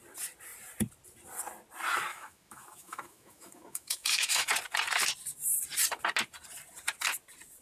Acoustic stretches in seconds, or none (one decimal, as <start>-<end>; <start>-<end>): 0.0-2.1; 4.5-7.6